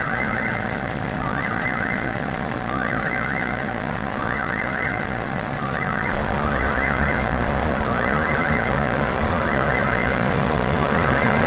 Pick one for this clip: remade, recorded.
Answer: remade